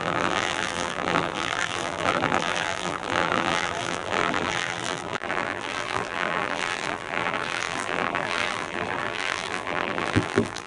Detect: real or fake fake